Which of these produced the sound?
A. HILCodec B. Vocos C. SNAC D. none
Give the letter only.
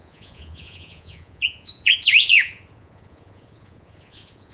B